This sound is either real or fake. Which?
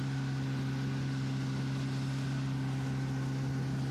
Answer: real